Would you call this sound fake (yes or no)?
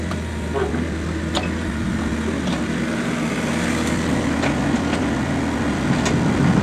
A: no